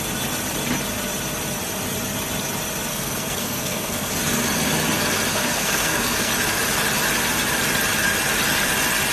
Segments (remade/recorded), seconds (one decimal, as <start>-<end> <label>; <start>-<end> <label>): 0.0-2.9 recorded; 2.9-4.1 remade; 4.1-5.3 recorded; 5.3-6.3 remade; 6.3-9.1 recorded